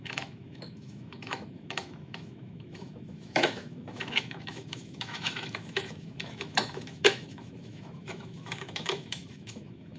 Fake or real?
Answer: fake